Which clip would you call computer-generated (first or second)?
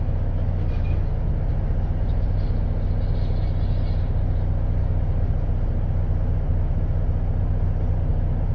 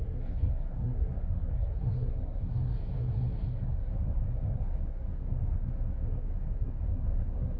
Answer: second